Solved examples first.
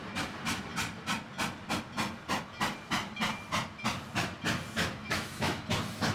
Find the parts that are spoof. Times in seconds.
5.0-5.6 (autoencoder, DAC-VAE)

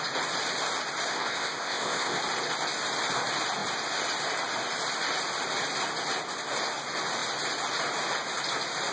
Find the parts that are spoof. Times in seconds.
1.1-2.2 (codec, ZipCodec)

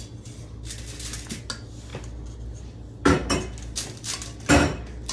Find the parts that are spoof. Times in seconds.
none

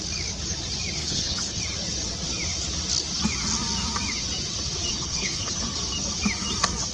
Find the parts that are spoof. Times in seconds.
1.0-1.6 (codec, HILCodec); 4.9-5.7

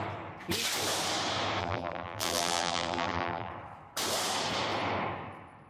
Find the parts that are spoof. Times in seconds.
1.6-3.5 (vocoder, BigVGAN v2)

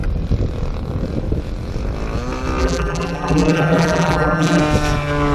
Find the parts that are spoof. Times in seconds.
2.6-4.6 (vocoder, BigVGAN v2)

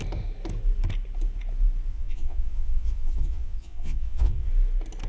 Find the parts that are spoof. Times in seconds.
1.9-4.5 (vocoder, Vocos)